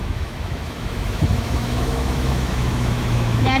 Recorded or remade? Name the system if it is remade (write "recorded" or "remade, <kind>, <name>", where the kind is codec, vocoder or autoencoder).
remade, autoencoder, DAC-VAE